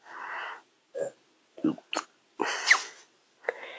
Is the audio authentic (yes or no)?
yes